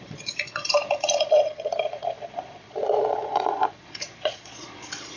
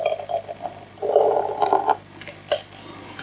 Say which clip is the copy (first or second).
first